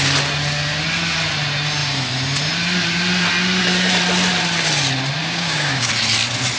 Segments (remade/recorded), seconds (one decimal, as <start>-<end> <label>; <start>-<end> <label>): 0.0-5.2 recorded; 5.2-5.9 remade; 5.9-6.6 recorded